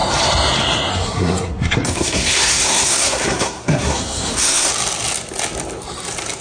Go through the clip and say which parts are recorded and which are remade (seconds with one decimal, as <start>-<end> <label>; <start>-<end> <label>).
0.0-0.9 recorded; 0.9-4.7 remade; 4.7-6.4 recorded